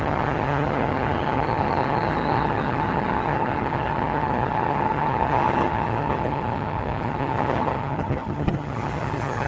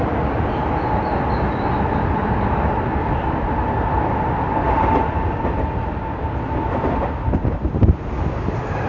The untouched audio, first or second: second